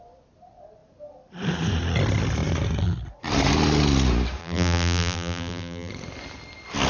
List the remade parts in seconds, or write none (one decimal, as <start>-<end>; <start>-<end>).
4.4-5.9